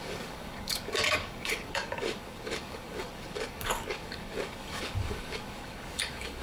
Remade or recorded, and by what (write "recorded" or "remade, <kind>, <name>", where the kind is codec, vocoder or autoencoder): remade, codec, DAC